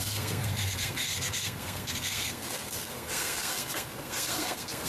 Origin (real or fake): fake